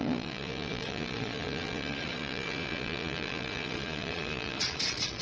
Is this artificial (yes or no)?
yes